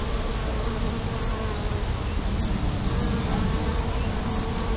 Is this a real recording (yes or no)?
yes